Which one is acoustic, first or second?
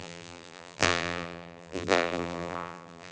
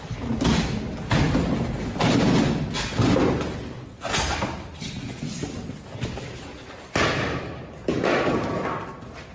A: second